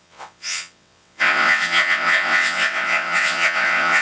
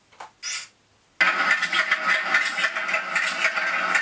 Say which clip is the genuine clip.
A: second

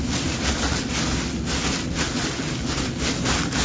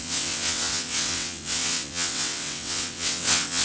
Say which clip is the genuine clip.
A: first